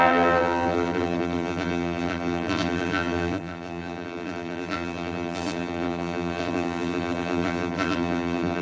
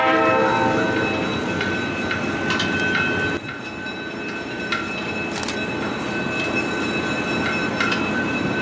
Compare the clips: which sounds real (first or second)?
second